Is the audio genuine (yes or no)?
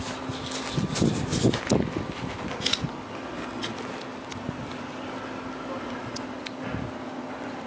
yes